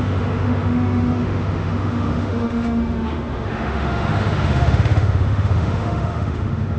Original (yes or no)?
no